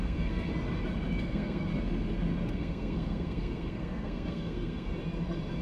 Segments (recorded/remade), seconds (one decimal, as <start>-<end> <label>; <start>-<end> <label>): 0.0-0.5 remade; 0.5-1.2 recorded; 1.2-1.7 remade; 1.7-2.5 recorded; 2.5-4.9 remade; 4.9-5.6 recorded